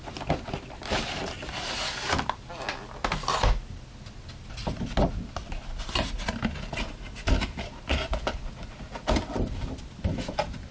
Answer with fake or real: real